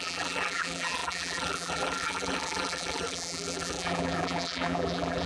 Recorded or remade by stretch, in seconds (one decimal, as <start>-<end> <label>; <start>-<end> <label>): 0.0-5.3 remade